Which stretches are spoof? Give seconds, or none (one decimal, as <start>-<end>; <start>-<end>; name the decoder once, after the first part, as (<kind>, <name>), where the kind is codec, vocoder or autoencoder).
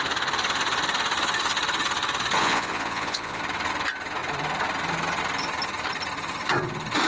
2.4-3.4 (vocoder, Vocos)